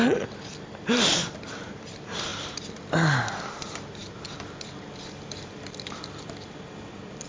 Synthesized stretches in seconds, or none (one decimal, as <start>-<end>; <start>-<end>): 0.0-2.3; 3.4-4.0; 4.7-7.3

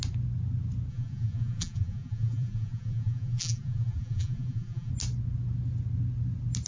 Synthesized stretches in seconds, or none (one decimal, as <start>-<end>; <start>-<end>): 0.9-4.9

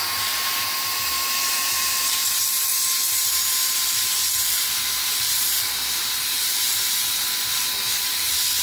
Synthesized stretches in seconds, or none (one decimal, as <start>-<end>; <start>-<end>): 0.0-2.7; 3.3-8.6

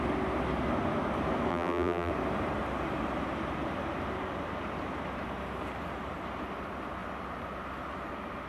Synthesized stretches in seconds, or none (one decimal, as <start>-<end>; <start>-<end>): 1.5-2.1

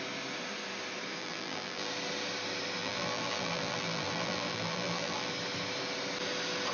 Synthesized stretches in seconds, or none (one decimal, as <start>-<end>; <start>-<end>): 1.2-1.9; 2.8-5.3

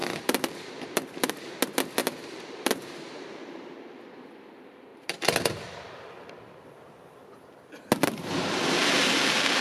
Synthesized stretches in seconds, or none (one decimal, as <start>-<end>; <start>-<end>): 0.0-1.3; 2.0-4.0